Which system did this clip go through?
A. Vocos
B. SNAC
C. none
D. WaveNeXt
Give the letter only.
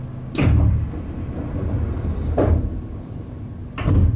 C